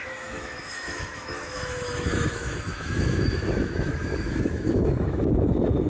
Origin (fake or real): fake